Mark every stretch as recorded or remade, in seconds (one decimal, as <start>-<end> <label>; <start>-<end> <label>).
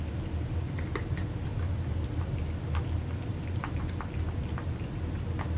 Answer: 0.0-5.6 remade